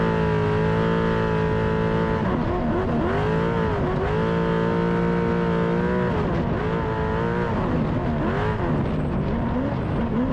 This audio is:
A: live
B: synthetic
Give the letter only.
A